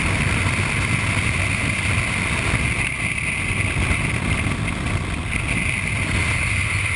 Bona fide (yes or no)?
yes